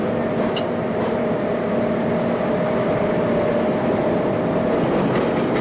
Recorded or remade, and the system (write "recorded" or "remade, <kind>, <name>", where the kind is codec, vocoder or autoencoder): recorded